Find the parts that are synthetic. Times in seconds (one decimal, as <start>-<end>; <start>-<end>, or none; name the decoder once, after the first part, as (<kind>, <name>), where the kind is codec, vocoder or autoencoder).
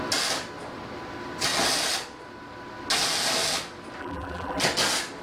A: 4.0-4.6 (vocoder, BigVGAN v2)